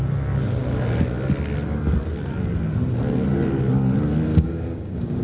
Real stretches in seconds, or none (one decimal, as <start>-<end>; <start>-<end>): 0.0-4.3